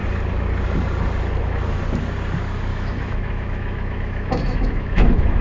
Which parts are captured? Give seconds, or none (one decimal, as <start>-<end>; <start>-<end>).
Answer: 0.0-2.7